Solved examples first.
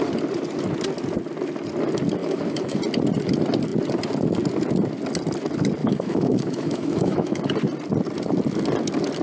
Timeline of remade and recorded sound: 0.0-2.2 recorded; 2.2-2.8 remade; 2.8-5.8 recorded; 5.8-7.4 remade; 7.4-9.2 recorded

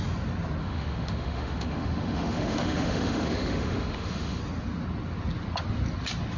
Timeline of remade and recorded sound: 0.0-0.6 recorded; 0.6-4.4 remade; 4.4-6.4 recorded